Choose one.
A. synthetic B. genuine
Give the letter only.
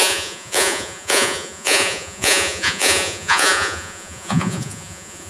A